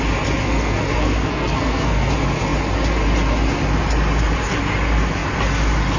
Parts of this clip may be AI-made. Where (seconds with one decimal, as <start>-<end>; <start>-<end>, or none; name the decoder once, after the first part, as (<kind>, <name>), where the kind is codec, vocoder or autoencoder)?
0.4-2.1 (codec, SNAC)